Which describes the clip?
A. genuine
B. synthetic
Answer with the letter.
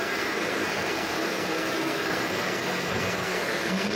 B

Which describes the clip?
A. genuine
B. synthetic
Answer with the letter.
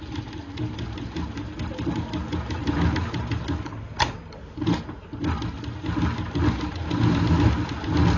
A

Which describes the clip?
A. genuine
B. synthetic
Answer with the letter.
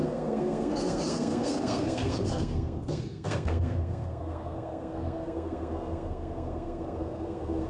B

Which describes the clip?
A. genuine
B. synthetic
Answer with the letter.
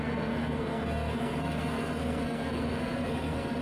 B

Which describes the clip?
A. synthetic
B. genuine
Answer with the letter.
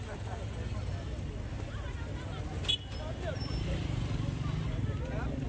B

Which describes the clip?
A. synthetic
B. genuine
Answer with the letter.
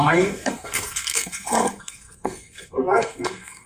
A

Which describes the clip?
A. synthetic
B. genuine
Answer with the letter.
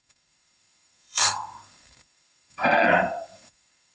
A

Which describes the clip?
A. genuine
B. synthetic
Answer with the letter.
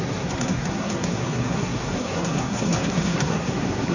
B